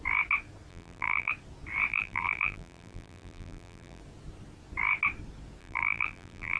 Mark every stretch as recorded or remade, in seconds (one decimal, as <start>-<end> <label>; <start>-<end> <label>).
0.0-0.7 recorded; 0.7-1.3 remade; 1.3-1.9 recorded; 1.9-4.0 remade; 4.0-5.6 recorded; 5.6-6.6 remade